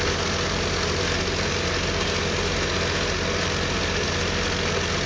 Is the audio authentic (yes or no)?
yes